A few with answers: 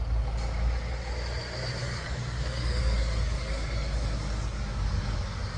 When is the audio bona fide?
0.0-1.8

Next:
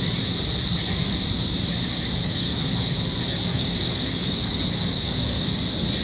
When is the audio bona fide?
0.0-2.2; 3.0-3.5; 5.6-6.0

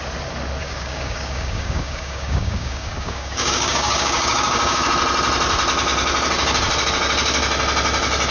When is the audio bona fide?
0.0-0.6; 4.9-8.3

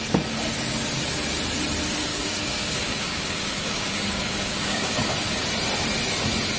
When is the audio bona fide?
0.0-2.1; 5.0-6.6

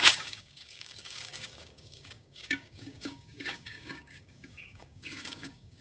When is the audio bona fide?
none

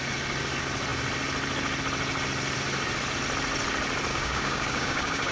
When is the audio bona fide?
0.0-4.1

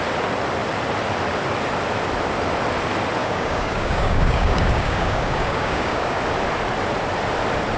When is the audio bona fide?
0.0-3.2; 6.2-7.8

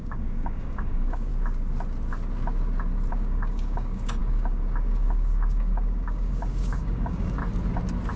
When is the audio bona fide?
1.3-3.1; 7.4-8.2